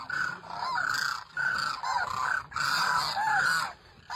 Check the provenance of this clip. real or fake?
real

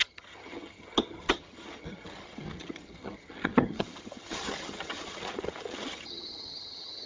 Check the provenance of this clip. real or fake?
fake